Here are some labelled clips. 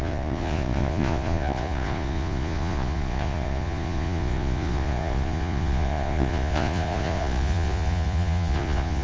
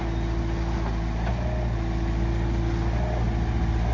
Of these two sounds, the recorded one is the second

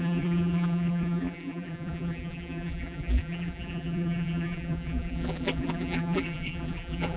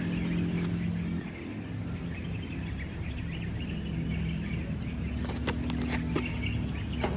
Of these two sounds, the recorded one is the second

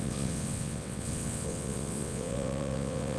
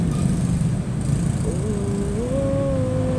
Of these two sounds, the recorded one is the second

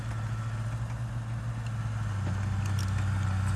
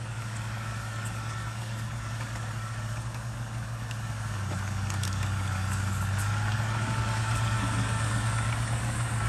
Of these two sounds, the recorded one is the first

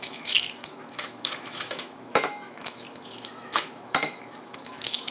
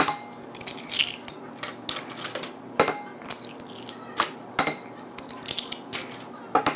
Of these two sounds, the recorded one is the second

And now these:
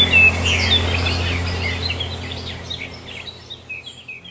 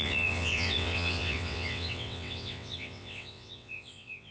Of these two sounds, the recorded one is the first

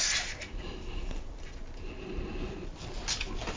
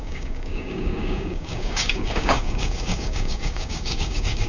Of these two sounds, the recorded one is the first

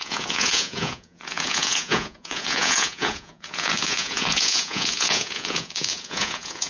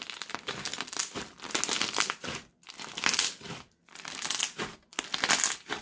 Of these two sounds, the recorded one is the second